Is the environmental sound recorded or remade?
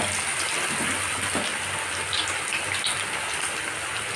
recorded